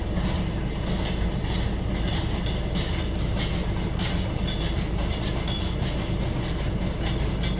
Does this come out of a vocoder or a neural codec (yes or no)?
no